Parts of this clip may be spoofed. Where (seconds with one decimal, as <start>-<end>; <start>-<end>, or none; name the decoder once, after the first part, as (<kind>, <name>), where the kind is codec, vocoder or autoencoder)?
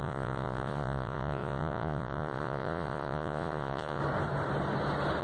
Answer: 0.0-4.0 (vocoder, Vocos)